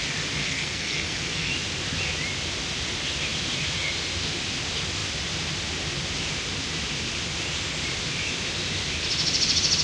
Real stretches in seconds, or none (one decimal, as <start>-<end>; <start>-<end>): 0.0-0.4; 1.5-9.8